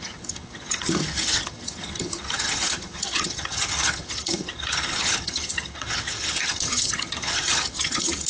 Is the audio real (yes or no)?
no